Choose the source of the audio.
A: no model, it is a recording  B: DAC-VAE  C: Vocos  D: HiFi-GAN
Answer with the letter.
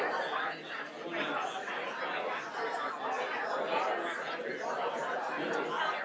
A